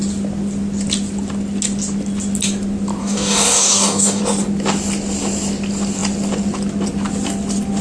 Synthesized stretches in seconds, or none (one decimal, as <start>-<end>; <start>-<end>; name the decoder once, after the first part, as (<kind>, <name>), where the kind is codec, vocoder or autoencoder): 3.0-4.2 (codec, DAC)

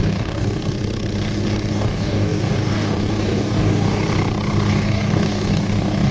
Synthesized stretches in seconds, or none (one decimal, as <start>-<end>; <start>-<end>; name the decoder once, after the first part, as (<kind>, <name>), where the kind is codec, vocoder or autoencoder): 0.0-0.6 (codec, DAC); 1.7-4.0; 4.7-6.1

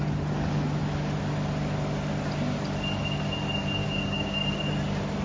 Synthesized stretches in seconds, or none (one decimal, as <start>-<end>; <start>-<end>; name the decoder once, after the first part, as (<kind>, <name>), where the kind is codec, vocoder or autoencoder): 3.8-4.5 (codec, DAC)

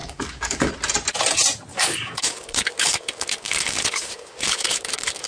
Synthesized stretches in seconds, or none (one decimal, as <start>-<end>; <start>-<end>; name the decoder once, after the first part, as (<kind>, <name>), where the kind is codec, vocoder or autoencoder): 0.0-0.7 (codec, DAC); 1.7-5.3

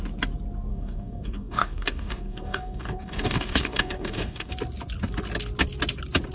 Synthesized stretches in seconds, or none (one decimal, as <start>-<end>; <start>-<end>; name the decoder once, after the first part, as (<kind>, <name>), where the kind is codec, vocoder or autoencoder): 0.7-4.5 (codec, DAC)